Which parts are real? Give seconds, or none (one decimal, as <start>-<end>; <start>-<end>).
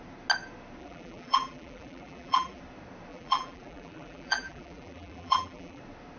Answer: 0.0-0.8; 2.6-3.1; 5.8-6.2